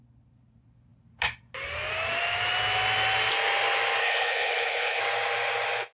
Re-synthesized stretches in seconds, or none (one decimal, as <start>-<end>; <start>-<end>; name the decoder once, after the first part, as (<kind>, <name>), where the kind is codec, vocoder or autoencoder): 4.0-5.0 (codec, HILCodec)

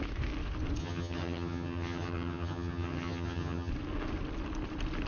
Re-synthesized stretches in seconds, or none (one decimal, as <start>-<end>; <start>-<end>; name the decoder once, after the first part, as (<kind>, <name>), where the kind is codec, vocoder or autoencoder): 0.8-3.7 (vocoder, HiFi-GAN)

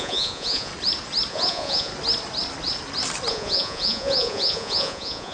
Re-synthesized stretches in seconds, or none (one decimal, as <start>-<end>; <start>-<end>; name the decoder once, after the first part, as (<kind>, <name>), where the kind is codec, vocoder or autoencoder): 0.0-0.7 (vocoder, Vocos); 1.3-1.9; 3.3-5.3

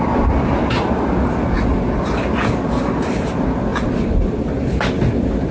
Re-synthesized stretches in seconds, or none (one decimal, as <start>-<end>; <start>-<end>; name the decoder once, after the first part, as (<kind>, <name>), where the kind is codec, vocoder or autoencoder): none

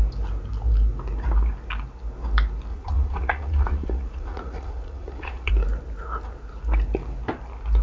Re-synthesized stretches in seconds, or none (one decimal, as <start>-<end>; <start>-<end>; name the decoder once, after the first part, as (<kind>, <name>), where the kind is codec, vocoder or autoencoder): 2.7-5.5 (vocoder, Vocos)